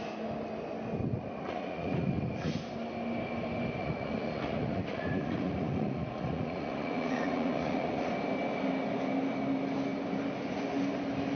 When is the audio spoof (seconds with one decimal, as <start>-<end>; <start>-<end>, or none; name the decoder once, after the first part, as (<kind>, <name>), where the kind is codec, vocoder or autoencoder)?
1.1-2.6 (vocoder, Vocos); 3.8-8.1